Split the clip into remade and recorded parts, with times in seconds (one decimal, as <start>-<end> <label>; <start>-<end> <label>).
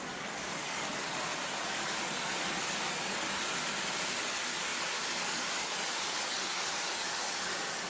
0.0-1.1 remade; 1.1-1.6 recorded; 1.6-3.5 remade; 3.5-4.2 recorded; 4.2-7.9 remade